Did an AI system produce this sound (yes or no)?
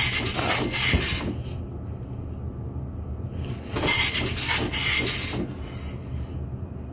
no